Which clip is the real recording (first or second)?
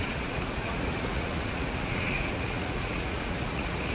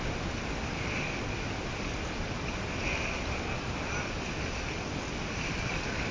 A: second